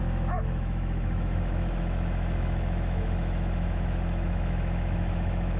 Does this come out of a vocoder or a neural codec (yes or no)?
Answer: yes